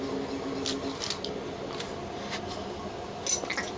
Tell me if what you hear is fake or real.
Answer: real